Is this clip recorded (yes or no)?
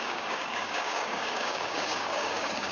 no